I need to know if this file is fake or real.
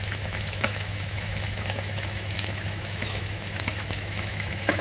fake